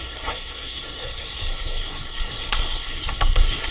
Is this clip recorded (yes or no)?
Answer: no